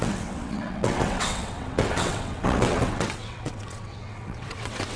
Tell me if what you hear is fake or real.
fake